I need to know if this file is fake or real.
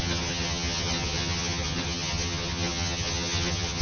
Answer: fake